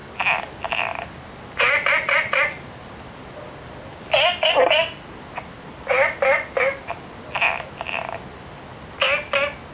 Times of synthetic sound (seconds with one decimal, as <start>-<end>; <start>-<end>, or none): none